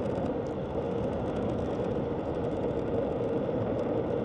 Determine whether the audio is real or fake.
real